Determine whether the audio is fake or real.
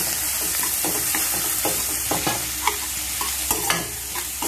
real